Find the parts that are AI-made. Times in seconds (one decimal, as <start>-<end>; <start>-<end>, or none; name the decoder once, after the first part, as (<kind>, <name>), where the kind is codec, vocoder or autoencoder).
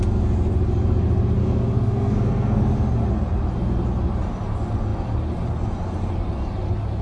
1.4-2.6 (codec, SNAC)